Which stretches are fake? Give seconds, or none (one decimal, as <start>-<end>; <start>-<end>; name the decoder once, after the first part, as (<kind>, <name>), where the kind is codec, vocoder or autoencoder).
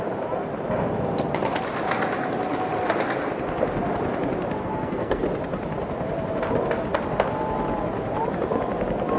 4.6-5.2 (codec, SNAC)